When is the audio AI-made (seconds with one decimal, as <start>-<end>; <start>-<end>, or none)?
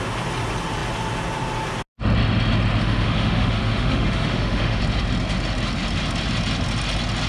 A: 2.8-4.8